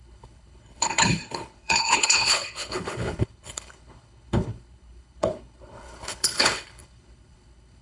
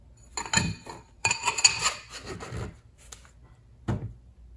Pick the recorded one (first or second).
second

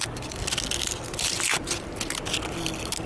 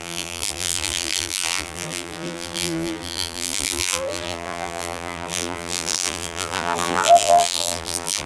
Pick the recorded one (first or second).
first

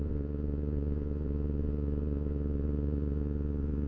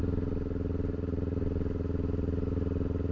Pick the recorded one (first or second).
second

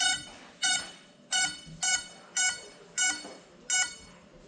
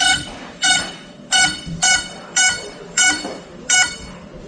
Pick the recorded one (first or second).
first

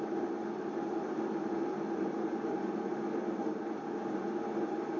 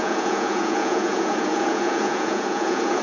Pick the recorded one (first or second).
first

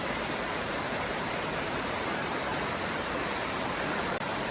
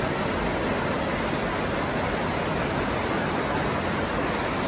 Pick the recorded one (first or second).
second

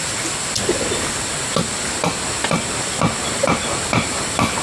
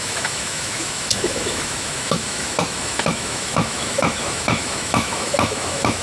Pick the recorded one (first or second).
first